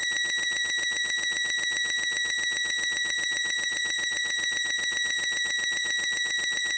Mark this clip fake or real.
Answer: fake